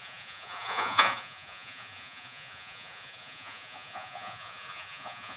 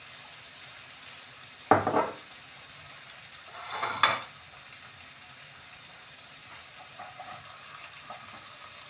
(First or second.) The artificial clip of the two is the first